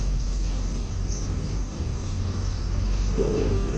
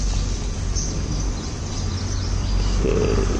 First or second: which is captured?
second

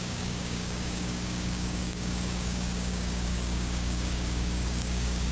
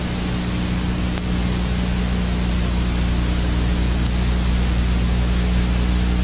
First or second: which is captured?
second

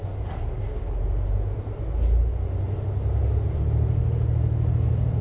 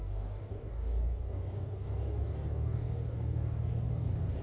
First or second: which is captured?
first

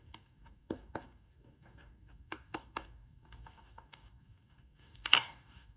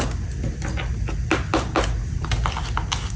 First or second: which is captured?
second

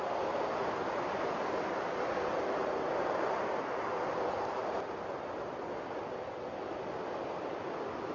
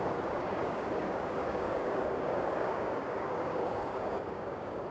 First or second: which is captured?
first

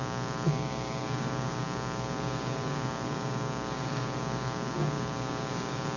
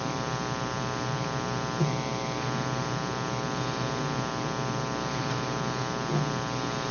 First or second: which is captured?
second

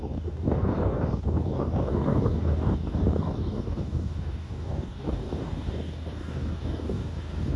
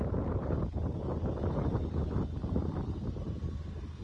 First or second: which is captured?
second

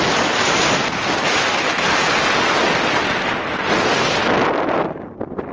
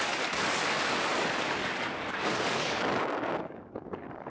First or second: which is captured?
first